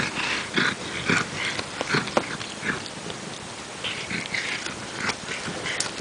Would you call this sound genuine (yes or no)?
yes